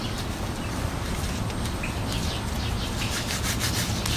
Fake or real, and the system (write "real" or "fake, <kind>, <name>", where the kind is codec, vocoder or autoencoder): real